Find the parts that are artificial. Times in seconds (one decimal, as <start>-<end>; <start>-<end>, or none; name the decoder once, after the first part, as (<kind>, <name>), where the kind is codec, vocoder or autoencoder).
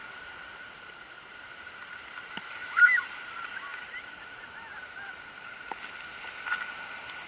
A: 0.0-3.3 (vocoder, BigVGAN v2); 3.7-5.7